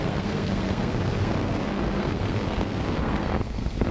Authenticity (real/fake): fake